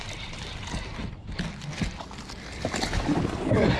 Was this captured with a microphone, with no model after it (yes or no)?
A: yes